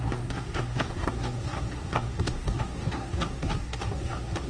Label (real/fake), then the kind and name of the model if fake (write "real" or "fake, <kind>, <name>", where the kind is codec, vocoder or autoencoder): fake, codec, SNAC